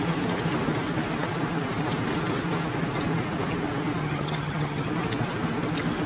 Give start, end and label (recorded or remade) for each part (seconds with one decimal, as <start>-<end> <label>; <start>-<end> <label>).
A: 0.0-4.0 recorded; 4.0-4.9 remade; 4.9-6.1 recorded